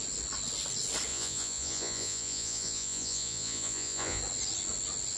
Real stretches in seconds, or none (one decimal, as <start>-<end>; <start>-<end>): 0.0-1.1; 4.2-5.2